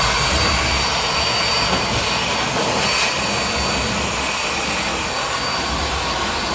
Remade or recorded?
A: recorded